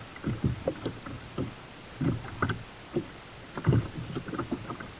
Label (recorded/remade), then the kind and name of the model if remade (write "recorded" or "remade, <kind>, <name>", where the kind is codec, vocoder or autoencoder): recorded